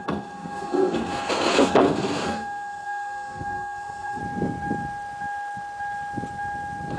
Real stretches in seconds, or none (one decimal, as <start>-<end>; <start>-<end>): 4.2-7.0